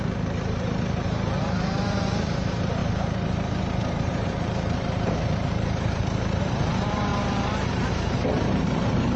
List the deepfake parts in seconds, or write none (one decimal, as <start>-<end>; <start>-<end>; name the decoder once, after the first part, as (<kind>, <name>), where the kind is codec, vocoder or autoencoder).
0.0-9.2 (vocoder, BigVGAN v2)